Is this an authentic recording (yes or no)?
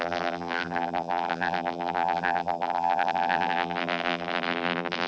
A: no